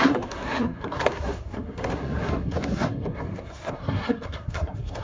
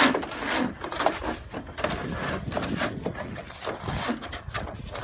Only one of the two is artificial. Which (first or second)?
first